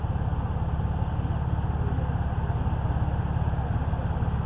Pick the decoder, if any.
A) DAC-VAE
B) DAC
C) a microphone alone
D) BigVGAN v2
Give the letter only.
C